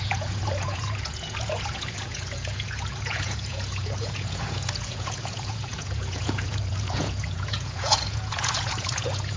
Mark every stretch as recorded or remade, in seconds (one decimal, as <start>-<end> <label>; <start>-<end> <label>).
0.0-9.4 remade